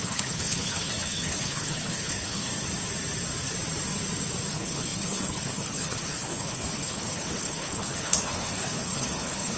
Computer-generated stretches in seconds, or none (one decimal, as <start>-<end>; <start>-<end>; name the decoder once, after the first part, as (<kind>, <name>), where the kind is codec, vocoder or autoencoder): 0.0-2.5 (codec, HILCodec); 4.5-9.6